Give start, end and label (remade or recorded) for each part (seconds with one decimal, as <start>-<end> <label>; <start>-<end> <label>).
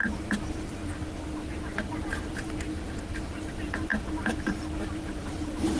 0.0-0.8 remade; 0.8-3.5 recorded; 3.5-5.8 remade